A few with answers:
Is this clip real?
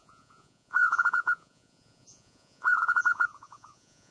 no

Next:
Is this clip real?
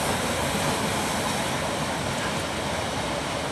yes